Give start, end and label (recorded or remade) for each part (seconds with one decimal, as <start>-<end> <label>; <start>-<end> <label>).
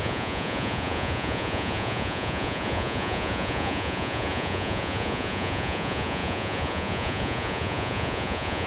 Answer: 0.0-8.7 remade